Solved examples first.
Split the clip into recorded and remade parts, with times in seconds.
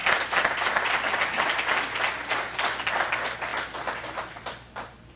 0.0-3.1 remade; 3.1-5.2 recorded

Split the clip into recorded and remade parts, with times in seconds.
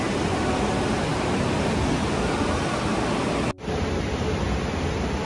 0.0-1.1 recorded; 1.1-1.7 remade; 1.7-5.2 recorded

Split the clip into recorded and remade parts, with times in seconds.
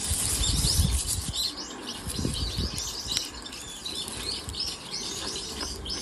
0.0-6.0 recorded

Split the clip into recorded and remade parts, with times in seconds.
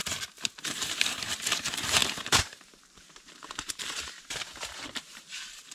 0.0-0.6 recorded; 0.6-5.7 remade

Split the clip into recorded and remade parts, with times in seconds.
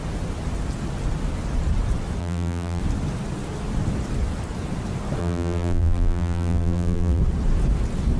0.0-2.2 recorded; 2.2-2.8 remade; 2.8-5.2 recorded; 5.2-7.2 remade; 7.2-8.2 recorded